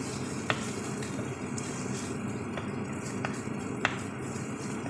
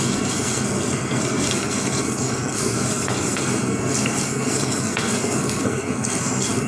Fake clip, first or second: second